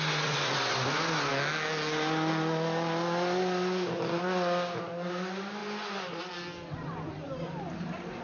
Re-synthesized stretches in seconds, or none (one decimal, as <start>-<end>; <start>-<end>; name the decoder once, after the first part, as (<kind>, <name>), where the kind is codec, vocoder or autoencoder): none